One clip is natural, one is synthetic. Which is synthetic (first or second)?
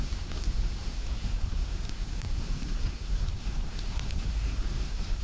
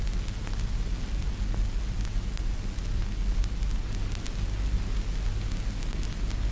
first